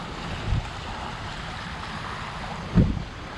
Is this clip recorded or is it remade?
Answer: recorded